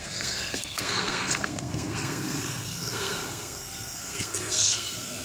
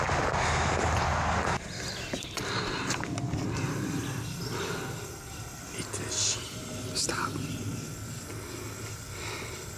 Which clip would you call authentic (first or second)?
second